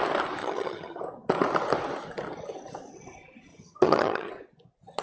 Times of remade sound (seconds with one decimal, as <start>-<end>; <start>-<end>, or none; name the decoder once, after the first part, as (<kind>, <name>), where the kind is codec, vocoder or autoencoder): 0.4-1.0 (vocoder, HiFi-GAN); 3.5-4.3